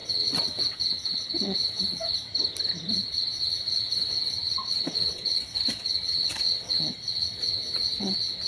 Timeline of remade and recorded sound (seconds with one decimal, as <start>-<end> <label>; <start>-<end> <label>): 0.0-2.3 remade; 2.3-2.9 recorded; 2.9-8.5 remade